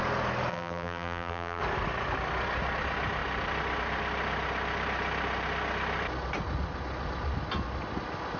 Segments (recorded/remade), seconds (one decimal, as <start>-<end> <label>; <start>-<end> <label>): 0.0-0.5 recorded; 0.5-1.6 remade; 1.6-8.4 recorded